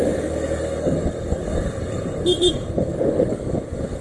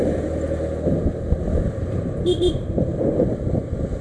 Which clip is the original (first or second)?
second